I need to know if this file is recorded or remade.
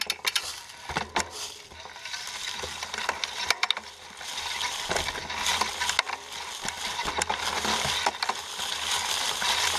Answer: recorded